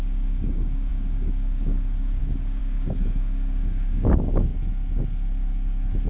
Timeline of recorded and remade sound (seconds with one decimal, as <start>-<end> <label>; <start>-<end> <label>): 0.0-4.5 remade; 4.5-6.1 recorded